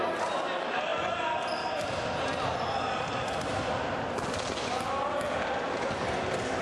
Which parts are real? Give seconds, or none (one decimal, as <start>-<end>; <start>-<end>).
0.0-6.6